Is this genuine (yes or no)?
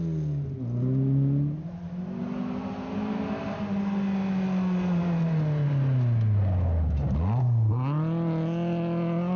yes